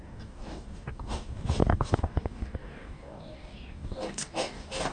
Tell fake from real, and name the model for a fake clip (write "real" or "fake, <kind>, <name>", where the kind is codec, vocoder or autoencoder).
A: fake, codec, DAC